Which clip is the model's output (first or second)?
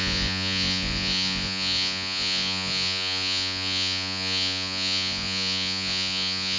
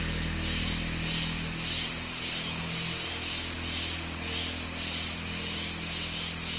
first